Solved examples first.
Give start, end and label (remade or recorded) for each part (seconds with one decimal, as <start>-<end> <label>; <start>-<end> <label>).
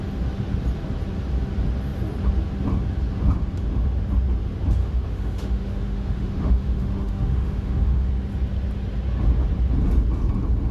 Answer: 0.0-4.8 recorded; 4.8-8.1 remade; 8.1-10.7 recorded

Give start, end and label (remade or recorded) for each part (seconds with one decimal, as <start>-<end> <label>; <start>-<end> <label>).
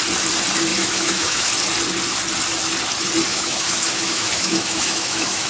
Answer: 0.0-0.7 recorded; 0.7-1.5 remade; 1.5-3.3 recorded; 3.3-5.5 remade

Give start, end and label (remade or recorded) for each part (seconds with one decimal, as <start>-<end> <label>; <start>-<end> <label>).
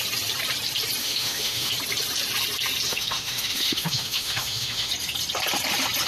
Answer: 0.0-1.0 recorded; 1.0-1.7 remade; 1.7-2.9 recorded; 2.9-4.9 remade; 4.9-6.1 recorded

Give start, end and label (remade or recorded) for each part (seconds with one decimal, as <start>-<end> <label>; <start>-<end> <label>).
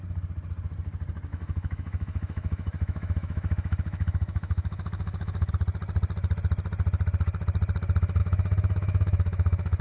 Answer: 0.0-1.3 recorded; 1.3-5.5 remade; 5.5-8.2 recorded; 8.2-9.8 remade